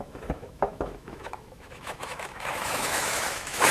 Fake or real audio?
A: fake